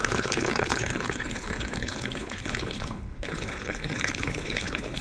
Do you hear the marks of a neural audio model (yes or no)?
yes